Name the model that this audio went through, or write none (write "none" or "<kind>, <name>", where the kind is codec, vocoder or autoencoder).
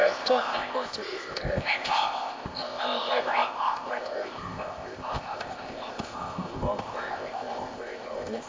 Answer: codec, ZipCodec